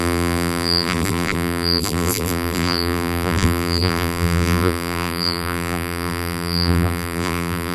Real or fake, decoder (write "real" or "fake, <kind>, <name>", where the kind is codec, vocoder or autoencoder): fake, vocoder, BigVGAN v2